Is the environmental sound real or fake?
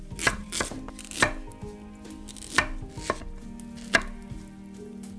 real